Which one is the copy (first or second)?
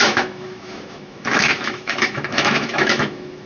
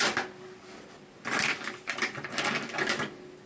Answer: first